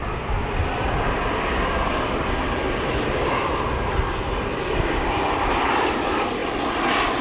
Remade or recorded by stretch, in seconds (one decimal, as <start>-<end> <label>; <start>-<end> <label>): 0.0-7.2 recorded